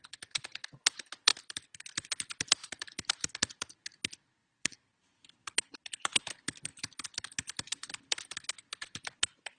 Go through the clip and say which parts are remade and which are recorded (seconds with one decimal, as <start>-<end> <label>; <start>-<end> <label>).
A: 0.0-2.6 recorded; 2.6-3.3 remade; 3.3-4.4 recorded; 4.4-5.5 remade; 5.5-6.7 recorded; 6.7-7.9 remade; 7.9-9.6 recorded